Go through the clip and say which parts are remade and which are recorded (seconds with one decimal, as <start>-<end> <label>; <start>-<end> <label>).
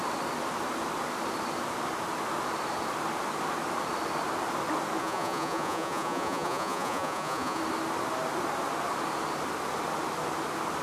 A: 0.0-5.0 recorded; 5.0-7.6 remade; 7.6-10.8 recorded